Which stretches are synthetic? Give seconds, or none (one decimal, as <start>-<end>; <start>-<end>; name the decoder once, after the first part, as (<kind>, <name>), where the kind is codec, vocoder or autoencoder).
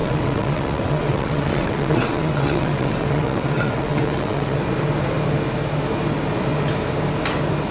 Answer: 0.0-4.6 (vocoder, WaveNeXt)